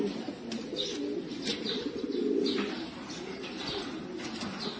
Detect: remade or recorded recorded